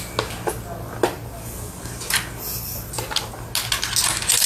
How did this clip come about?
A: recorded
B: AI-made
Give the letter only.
A